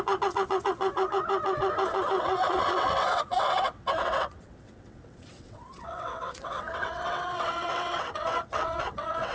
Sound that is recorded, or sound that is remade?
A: remade